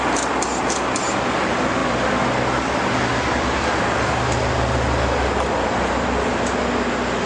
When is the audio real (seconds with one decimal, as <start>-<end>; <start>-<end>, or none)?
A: 0.0-7.3